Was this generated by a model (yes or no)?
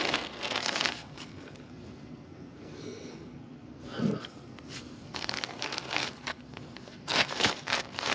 yes